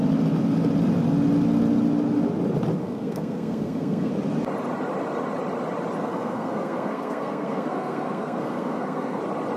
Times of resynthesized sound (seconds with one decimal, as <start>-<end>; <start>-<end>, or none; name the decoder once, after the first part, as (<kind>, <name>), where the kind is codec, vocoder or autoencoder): 2.8-4.1 (codec, SNAC); 6.0-9.2